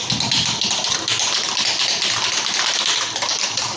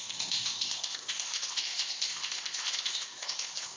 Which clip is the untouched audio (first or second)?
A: first